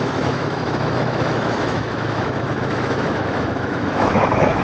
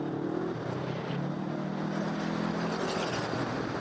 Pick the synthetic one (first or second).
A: first